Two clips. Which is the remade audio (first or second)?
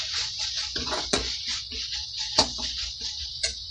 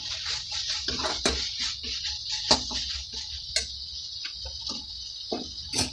first